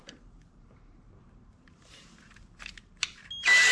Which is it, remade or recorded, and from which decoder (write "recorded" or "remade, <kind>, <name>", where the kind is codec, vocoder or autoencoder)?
remade, vocoder, BigVGAN v2